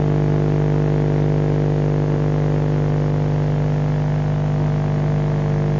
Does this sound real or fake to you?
real